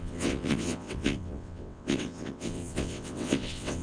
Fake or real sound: fake